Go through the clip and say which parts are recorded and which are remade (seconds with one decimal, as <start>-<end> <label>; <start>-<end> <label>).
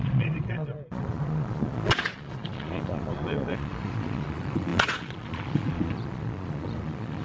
0.0-7.2 remade